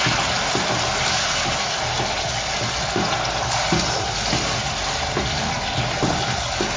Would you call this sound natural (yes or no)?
yes